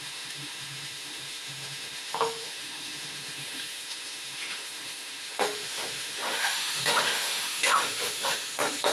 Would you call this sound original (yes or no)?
no